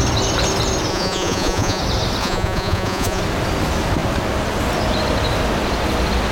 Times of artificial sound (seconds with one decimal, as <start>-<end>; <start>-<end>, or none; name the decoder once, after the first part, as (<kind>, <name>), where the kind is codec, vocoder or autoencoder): 0.9-1.8 (vocoder, Vocos); 2.2-3.2